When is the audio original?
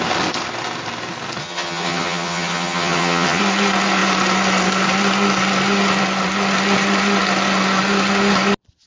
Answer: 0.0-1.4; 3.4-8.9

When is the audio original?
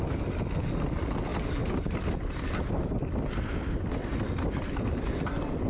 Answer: 0.0-5.7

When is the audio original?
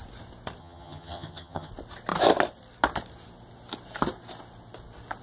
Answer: 0.0-0.6; 1.7-5.2